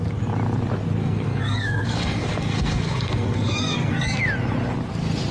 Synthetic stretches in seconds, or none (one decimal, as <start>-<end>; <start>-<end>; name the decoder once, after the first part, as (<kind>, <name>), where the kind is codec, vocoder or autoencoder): 1.0-4.2 (codec, SNAC)